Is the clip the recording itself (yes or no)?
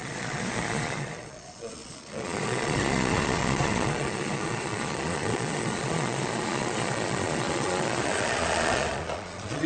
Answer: no